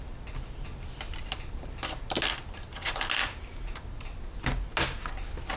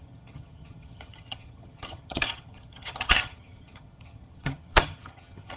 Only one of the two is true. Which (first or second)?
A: first